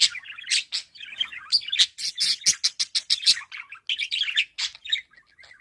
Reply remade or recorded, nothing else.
recorded